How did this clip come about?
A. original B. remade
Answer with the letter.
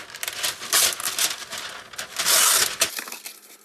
A